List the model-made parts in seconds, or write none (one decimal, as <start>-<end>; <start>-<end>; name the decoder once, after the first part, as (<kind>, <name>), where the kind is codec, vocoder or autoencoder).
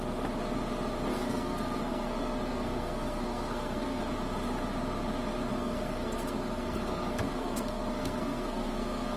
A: 1.1-4.0 (codec, SNAC); 5.5-9.2